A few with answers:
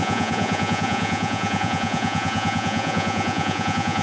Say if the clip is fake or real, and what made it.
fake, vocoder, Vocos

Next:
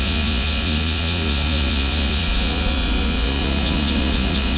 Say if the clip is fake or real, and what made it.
fake, vocoder, Vocos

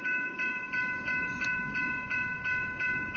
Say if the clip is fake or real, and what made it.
fake, vocoder, Vocos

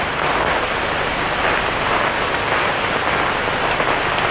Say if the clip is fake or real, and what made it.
real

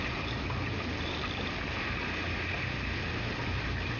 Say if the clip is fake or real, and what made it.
real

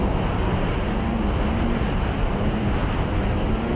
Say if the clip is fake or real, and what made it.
real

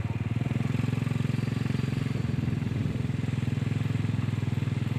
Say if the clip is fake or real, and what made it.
real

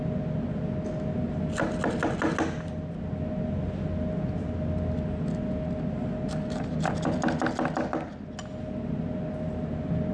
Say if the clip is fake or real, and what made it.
real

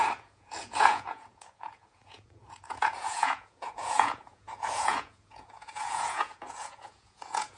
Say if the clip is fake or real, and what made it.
fake, vocoder, Vocos